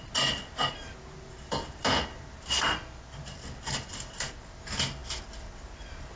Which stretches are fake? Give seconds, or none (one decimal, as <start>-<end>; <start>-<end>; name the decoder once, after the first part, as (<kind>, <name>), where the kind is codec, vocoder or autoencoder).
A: none